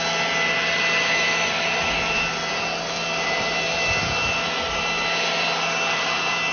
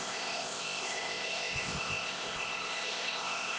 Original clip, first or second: first